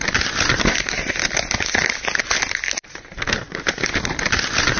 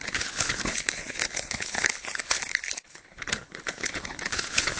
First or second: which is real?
first